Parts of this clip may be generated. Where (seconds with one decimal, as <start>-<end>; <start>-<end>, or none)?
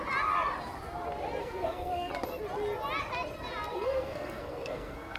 1.4-2.1; 3.7-5.2